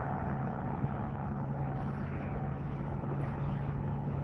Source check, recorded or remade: remade